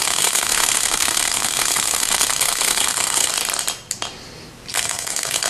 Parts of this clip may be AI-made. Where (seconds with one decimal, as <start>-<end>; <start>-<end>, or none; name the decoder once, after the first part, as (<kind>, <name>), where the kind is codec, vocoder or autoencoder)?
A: 0.0-3.3 (codec, SNAC); 4.7-5.5